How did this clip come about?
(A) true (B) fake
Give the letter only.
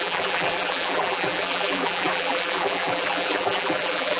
B